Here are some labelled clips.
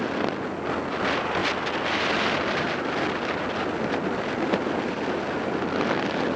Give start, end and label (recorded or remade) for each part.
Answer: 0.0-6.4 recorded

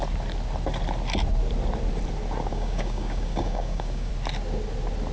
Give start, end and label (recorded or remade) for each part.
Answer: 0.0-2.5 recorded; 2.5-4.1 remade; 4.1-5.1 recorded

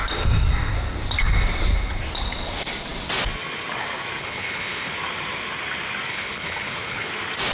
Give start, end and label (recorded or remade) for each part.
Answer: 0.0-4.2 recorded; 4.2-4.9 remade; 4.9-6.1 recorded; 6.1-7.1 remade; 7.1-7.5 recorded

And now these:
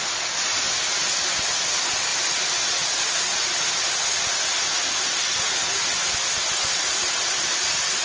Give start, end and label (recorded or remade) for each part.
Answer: 0.0-8.0 recorded